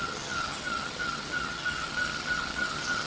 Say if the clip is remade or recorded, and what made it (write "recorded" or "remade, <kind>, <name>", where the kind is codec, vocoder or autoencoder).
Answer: remade, vocoder, HiFi-GAN